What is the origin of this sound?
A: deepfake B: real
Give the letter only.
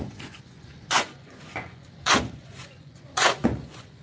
A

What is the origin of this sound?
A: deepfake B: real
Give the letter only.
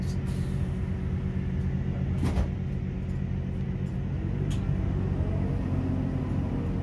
B